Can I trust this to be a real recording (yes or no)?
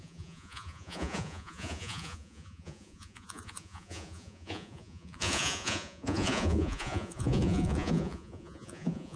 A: no